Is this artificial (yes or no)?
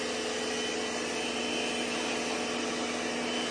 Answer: no